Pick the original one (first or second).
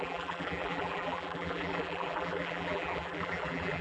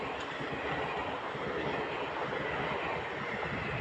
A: second